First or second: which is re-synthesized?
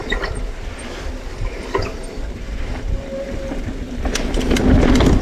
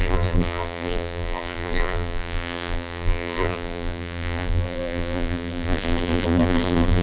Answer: second